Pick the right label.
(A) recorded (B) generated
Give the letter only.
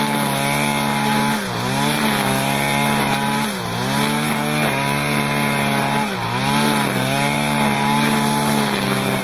A